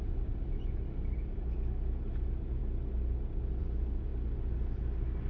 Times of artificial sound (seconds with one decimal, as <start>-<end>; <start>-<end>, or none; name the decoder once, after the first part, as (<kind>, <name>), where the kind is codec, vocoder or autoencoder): none